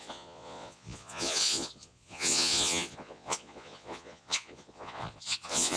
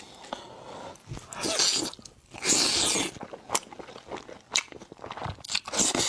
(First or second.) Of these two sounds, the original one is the second